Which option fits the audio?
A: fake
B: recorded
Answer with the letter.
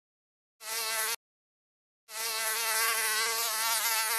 B